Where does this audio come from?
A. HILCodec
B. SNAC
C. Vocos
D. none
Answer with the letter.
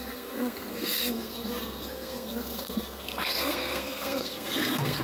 B